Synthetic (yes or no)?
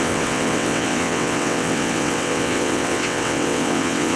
yes